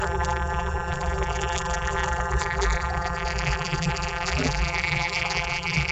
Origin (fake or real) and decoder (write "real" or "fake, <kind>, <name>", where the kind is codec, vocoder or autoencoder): fake, vocoder, BigVGAN v2